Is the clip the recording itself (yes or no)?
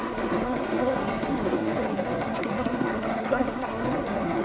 no